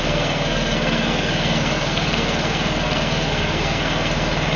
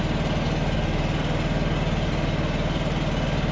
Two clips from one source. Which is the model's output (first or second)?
first